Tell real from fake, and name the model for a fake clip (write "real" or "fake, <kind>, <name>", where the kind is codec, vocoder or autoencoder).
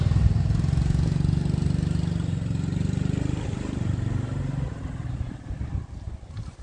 real